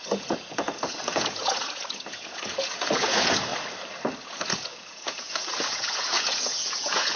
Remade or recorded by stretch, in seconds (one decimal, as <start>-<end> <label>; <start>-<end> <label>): 0.0-3.5 remade; 3.5-4.2 recorded; 4.2-7.2 remade